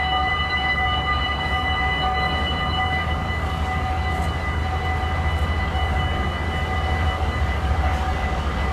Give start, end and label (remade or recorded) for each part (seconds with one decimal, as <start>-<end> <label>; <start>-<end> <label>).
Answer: 0.0-4.6 remade; 4.6-5.6 recorded; 5.6-8.7 remade